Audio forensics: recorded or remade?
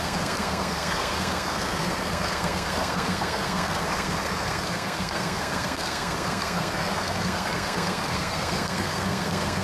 remade